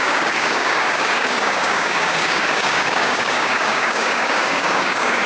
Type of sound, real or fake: fake